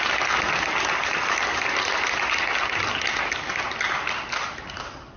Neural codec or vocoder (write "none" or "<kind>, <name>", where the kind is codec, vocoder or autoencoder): none